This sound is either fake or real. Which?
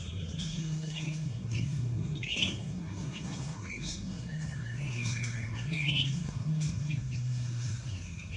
fake